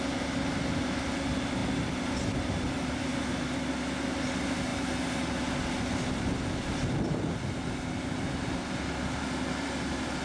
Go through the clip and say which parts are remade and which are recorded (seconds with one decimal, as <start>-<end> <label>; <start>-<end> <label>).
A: 0.0-10.2 recorded